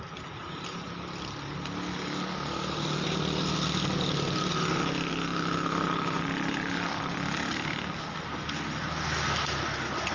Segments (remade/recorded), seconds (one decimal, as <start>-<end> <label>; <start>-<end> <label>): 0.0-10.1 recorded